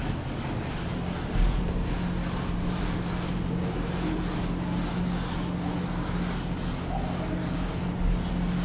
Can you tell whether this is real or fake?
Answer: real